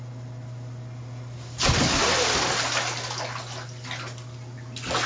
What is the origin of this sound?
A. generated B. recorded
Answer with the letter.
B